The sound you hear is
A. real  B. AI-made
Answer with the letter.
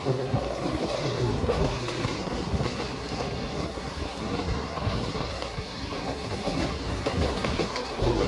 B